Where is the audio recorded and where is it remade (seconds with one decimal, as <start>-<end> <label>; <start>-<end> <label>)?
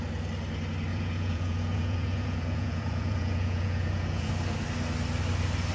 0.0-0.9 recorded; 0.9-4.3 remade; 4.3-5.7 recorded